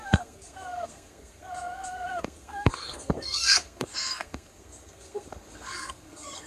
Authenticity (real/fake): fake